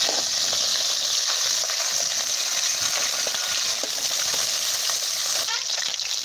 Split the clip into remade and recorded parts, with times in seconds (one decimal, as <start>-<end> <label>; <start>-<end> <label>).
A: 0.0-6.2 recorded

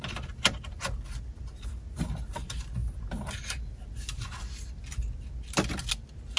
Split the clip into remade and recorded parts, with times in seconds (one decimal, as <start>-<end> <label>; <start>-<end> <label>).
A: 0.0-6.4 recorded

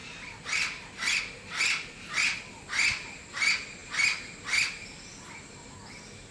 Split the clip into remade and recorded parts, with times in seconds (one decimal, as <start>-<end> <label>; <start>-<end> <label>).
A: 0.0-6.3 recorded